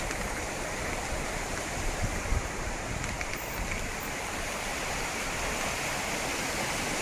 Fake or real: real